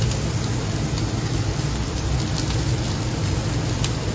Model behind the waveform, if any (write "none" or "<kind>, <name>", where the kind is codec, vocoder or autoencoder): none